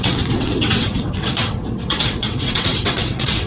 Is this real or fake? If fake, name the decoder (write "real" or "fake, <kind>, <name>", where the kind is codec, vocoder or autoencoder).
fake, vocoder, WaveNeXt